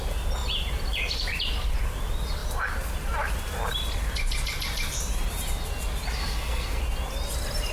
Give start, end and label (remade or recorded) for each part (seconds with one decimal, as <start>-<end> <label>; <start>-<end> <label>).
0.0-6.2 recorded; 6.2-6.8 remade; 6.8-7.7 recorded